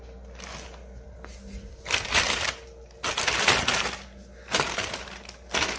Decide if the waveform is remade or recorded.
recorded